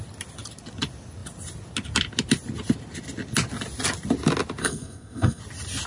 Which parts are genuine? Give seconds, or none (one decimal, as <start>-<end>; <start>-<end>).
0.0-4.6; 5.4-5.9